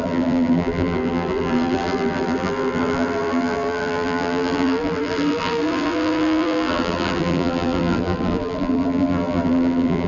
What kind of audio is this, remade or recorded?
remade